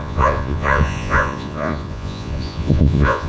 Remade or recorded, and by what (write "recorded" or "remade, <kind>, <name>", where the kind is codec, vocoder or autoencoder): remade, vocoder, Vocos